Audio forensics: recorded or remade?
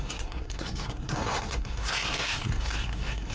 remade